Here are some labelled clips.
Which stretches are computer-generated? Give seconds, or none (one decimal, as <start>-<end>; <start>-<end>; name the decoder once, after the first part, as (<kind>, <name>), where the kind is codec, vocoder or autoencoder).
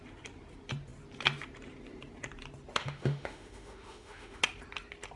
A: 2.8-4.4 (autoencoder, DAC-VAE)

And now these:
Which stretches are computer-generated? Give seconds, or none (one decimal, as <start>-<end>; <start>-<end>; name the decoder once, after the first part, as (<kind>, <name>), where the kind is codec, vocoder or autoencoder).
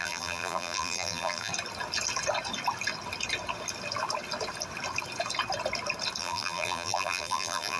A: 0.0-1.5 (vocoder, BigVGAN v2); 6.2-7.8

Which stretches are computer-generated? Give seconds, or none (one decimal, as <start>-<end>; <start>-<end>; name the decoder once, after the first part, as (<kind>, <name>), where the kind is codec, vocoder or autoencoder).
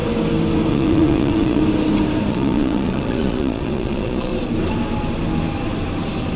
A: 0.7-1.6 (vocoder, Vocos); 2.3-4.3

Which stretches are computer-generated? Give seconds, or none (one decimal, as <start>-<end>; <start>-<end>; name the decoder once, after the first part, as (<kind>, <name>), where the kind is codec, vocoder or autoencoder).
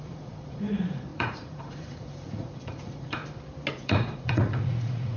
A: 0.0-3.2 (vocoder, Vocos); 3.7-5.2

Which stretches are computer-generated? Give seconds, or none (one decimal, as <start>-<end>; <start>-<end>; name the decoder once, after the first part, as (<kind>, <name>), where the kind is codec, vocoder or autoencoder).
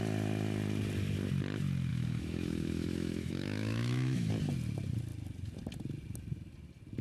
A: 1.9-4.3 (autoencoder, DAC-VAE)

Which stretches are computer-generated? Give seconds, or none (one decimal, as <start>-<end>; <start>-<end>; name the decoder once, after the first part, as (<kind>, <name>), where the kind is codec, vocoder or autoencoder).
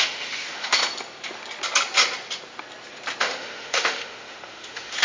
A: 0.0-0.8 (autoencoder, DAC-VAE); 3.2-5.0